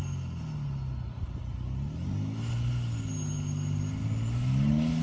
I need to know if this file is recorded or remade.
recorded